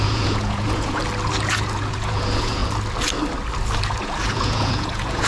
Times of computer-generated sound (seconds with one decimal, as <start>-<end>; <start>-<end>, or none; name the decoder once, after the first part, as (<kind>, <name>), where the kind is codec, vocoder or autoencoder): 0.0-1.0 (vocoder, Vocos); 1.5-2.6; 4.0-5.3